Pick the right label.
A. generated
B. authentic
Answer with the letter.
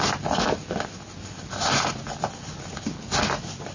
B